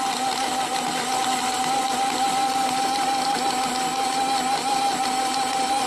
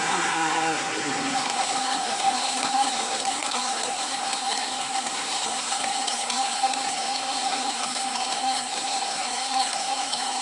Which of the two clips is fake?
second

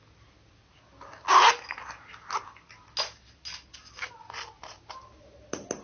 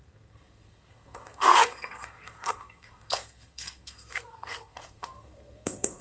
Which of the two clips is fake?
second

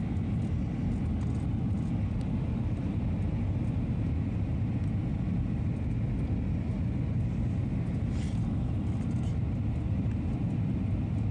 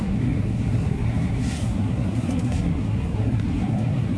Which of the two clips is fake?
second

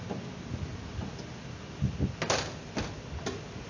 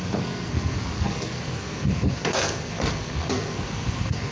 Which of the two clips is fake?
second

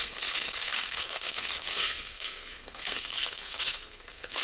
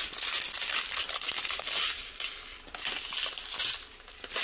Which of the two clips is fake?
first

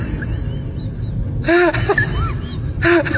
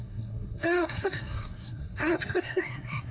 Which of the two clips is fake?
second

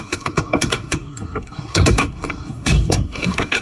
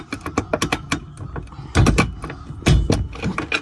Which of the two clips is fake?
first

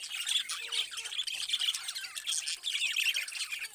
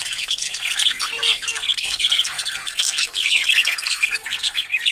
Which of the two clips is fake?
second